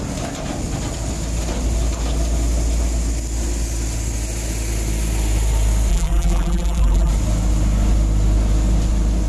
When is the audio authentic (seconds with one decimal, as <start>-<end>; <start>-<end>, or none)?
0.0-5.9; 7.1-9.3